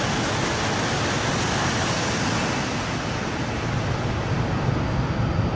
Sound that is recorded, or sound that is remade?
recorded